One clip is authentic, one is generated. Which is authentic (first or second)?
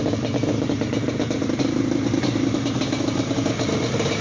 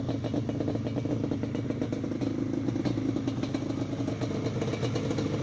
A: second